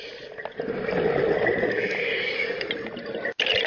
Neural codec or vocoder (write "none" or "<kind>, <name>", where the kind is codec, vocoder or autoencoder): none